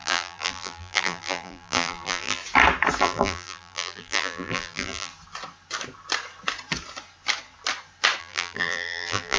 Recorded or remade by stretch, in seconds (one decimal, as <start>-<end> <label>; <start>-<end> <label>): 0.0-2.4 remade; 2.4-3.0 recorded; 3.0-5.1 remade; 5.1-8.2 recorded; 8.2-9.4 remade